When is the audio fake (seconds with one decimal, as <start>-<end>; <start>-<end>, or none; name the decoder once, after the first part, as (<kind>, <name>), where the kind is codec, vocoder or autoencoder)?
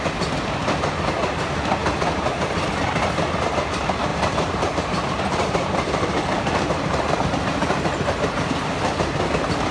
4.1-9.2 (vocoder, BigVGAN v2)